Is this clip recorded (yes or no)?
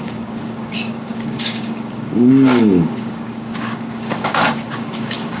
no